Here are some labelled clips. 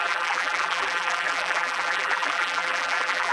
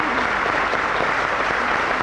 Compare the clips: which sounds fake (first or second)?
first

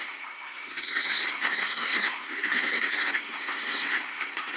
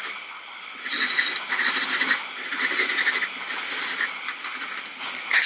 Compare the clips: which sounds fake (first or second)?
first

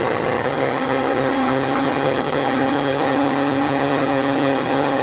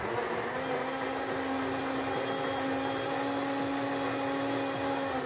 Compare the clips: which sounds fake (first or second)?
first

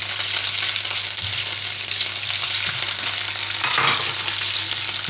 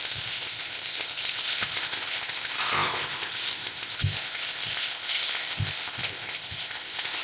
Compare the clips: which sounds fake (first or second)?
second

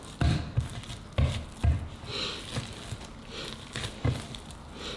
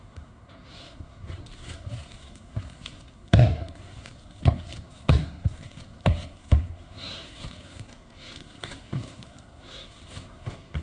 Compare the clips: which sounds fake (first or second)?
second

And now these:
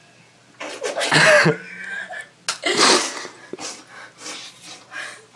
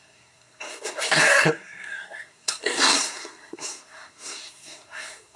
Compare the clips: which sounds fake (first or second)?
second